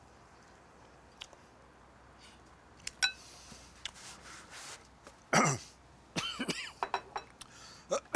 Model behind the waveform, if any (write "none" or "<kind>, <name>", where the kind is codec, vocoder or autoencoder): none